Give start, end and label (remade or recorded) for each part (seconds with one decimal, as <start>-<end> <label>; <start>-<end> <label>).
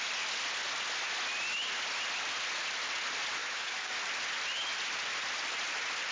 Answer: 0.0-3.4 recorded; 3.4-3.9 remade; 3.9-6.1 recorded